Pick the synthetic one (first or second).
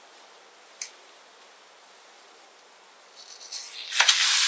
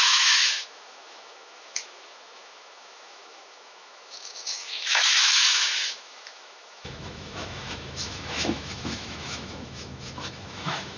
second